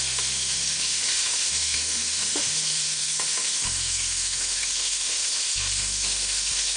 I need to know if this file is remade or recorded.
remade